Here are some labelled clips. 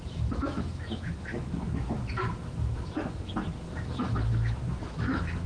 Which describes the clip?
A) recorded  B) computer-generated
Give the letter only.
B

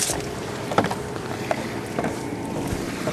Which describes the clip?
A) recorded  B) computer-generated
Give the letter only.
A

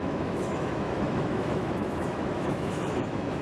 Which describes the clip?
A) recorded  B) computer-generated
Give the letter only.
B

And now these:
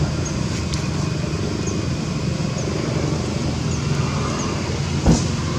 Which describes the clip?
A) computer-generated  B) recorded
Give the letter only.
B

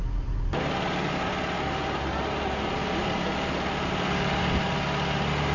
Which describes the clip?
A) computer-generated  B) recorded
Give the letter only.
B